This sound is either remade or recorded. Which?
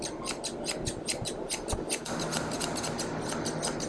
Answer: recorded